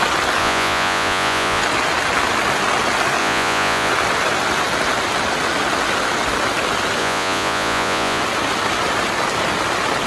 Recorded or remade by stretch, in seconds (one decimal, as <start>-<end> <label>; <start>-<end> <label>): 0.0-0.4 recorded; 0.4-1.6 remade; 1.6-3.2 recorded; 3.2-3.9 remade; 3.9-7.0 recorded; 7.0-8.2 remade; 8.2-10.1 recorded